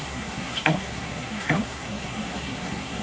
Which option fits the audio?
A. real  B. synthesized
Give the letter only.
B